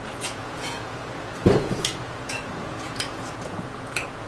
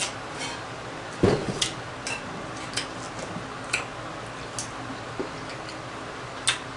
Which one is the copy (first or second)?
first